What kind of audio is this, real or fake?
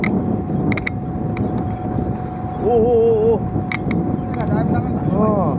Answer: real